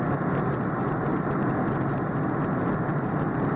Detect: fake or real real